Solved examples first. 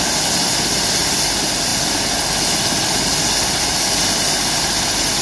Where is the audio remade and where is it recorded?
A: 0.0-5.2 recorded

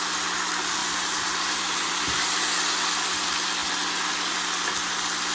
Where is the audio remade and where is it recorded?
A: 0.0-0.8 recorded; 0.8-1.9 remade; 1.9-5.3 recorded

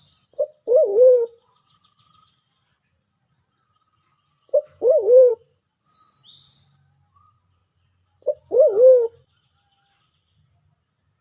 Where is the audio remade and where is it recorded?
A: 0.0-0.9 recorded; 0.9-5.3 remade; 5.3-7.6 recorded; 7.6-8.4 remade; 8.4-11.2 recorded

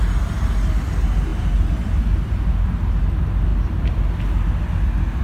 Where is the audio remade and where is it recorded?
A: 0.0-1.3 recorded; 1.3-2.5 remade; 2.5-3.5 recorded; 3.5-4.2 remade; 4.2-5.2 recorded